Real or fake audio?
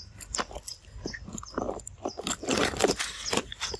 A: real